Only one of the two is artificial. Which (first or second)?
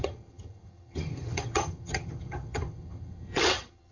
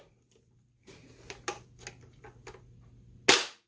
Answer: first